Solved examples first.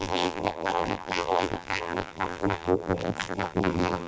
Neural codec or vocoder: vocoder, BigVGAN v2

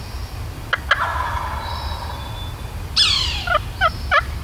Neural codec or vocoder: none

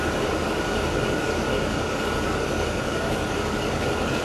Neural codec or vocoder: codec, DAC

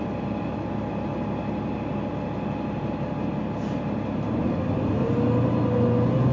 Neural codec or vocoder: none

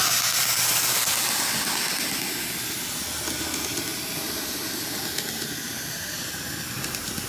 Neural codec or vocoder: none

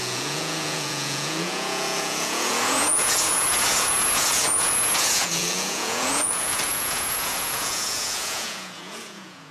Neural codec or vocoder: vocoder, Vocos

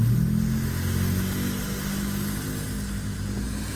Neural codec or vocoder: none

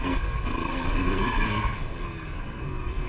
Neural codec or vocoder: codec, SNAC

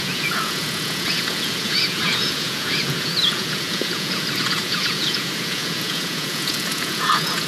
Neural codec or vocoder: vocoder, Vocos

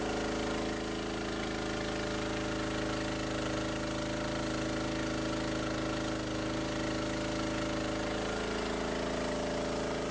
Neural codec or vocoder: none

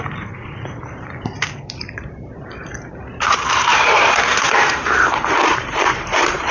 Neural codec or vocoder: vocoder, BigVGAN v2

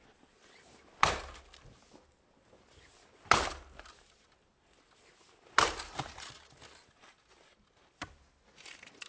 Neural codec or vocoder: none